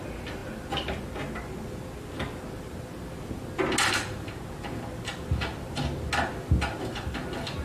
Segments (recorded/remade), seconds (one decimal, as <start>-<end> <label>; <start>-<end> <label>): 0.0-7.6 recorded